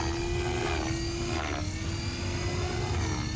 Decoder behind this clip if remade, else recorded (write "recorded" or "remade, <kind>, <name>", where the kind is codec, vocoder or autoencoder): recorded